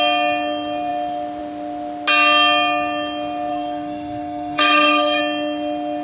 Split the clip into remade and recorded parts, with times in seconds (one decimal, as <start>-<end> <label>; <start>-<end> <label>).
0.0-3.5 recorded; 3.5-5.2 remade; 5.2-6.0 recorded